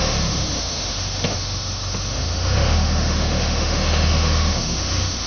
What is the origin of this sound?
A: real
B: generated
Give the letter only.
B